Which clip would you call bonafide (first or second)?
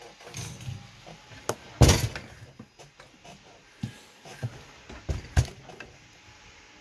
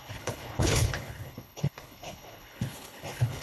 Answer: first